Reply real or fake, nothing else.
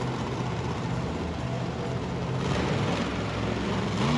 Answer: real